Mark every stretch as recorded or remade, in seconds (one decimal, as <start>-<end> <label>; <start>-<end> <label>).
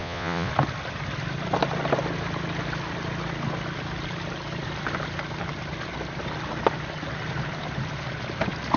0.0-0.5 remade; 0.5-8.8 recorded